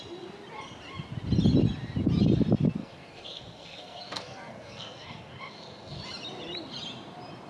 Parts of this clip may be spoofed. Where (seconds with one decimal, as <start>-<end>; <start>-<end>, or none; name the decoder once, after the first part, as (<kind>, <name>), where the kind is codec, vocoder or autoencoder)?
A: 2.8-6.0 (codec, SNAC)